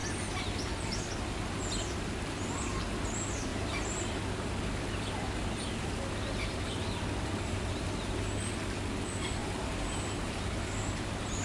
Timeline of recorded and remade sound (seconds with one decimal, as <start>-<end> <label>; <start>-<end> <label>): 0.0-3.5 recorded; 3.5-4.2 remade; 4.2-9.4 recorded; 9.4-10.3 remade; 10.3-11.4 recorded